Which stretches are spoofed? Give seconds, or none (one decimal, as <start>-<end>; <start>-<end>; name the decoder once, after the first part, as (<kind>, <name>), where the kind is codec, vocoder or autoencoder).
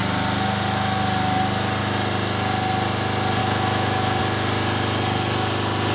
3.4-4.2 (autoencoder, DAC-VAE)